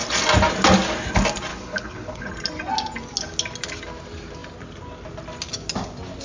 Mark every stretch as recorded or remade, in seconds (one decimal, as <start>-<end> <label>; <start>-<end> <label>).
0.0-1.5 recorded; 1.5-2.3 remade; 2.3-6.2 recorded